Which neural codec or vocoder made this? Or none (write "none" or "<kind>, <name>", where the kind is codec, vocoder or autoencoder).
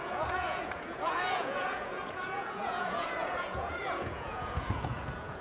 vocoder, Vocos